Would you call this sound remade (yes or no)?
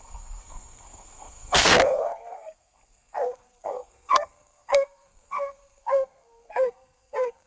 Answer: yes